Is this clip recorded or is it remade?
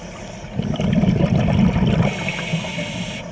recorded